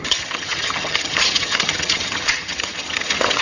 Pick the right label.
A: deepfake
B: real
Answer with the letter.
A